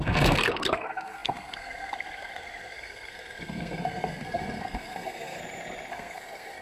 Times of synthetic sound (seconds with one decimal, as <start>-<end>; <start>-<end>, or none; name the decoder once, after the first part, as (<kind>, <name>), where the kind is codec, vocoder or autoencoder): 0.0-5.4 (codec, SNAC); 5.9-6.6